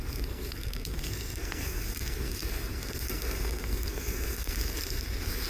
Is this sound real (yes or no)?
no